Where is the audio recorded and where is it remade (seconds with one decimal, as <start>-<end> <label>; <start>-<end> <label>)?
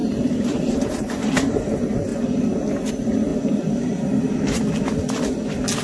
0.0-1.7 remade; 1.7-3.3 recorded; 3.3-4.7 remade; 4.7-5.8 recorded